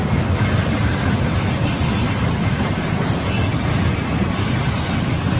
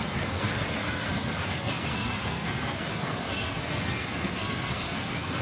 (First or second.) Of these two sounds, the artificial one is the second